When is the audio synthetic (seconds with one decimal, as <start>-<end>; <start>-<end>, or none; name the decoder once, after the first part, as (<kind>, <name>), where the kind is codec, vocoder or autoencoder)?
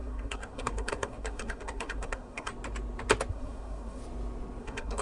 0.0-2.5 (codec, SNAC); 3.3-4.0; 4.6-5.0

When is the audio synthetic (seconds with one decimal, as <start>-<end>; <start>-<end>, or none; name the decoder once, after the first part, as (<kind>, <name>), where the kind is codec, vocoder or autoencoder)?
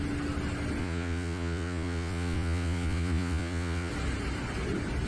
0.8-3.9 (vocoder, Vocos)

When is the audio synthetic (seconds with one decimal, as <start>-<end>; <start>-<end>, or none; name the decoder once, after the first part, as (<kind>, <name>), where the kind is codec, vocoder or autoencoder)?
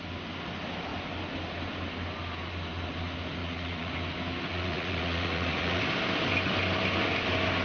3.4-3.9 (vocoder, Vocos); 4.5-5.8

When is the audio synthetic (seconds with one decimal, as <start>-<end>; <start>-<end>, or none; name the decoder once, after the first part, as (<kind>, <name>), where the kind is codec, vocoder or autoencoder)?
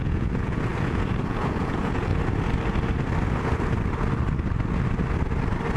0.0-2.1 (vocoder, Vocos)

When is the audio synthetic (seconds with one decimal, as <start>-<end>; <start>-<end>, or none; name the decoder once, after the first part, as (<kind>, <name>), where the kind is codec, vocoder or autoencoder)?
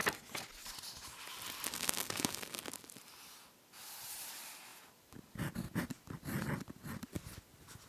1.7-2.6 (codec, SNAC)